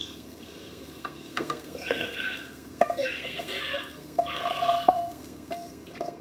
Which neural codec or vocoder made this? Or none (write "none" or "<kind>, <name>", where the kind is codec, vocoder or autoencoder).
codec, SNAC